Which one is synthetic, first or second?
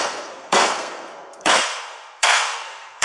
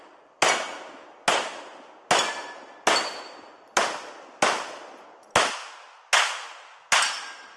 first